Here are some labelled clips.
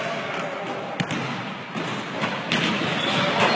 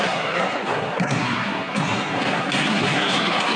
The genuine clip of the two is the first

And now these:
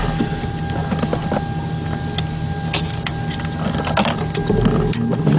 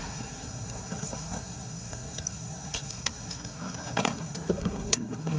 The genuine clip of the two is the first